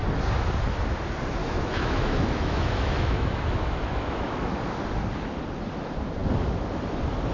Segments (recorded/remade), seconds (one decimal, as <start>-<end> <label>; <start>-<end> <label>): 0.0-1.4 recorded; 1.4-4.6 remade; 4.6-7.3 recorded